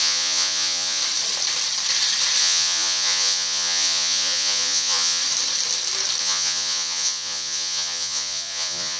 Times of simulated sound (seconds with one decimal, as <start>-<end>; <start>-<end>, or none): 0.0-1.0; 2.4-5.2; 6.2-9.0